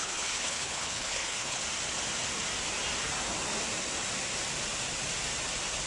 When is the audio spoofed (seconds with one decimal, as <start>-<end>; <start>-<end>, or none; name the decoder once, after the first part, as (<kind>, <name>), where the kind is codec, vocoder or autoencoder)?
0.0-1.6 (codec, HILCodec)